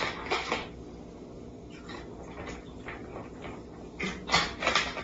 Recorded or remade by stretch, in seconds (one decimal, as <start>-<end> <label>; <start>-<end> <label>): 0.0-5.0 recorded